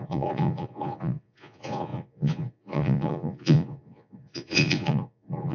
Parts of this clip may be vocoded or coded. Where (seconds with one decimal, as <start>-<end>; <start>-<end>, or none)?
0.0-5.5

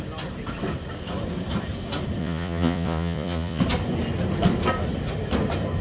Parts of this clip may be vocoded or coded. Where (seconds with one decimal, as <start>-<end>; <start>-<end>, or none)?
2.2-3.6

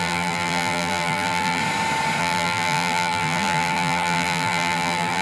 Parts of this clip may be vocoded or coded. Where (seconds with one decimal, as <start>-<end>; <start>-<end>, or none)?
0.0-1.6; 2.2-5.2

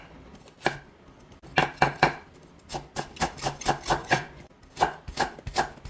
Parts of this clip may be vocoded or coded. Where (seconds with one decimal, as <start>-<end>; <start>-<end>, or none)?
4.0-4.5

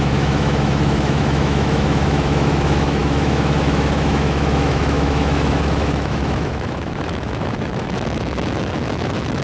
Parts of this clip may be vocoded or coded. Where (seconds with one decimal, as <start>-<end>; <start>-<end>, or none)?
0.0-9.4

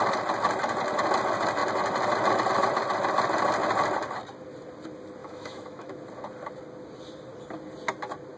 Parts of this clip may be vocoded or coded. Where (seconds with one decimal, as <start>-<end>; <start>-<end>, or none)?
5.2-6.0

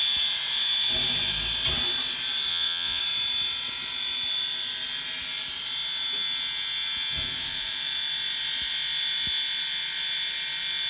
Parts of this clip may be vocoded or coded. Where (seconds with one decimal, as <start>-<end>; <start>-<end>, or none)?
2.5-3.0

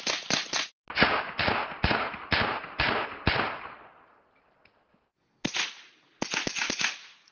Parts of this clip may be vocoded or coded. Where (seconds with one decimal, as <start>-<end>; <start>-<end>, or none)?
none